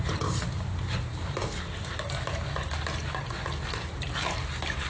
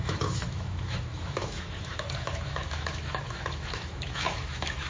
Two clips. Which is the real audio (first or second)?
first